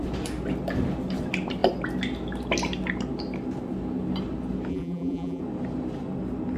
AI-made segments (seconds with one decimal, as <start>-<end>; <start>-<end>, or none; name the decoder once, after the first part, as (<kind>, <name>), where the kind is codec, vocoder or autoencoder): 4.7-5.4 (vocoder, BigVGAN v2)